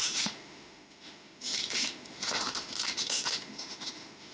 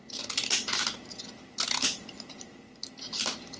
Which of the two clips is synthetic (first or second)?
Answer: first